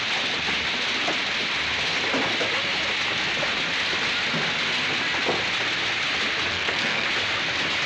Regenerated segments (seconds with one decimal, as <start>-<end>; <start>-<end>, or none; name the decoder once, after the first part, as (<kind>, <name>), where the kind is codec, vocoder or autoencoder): 6.5-7.1 (codec, SNAC)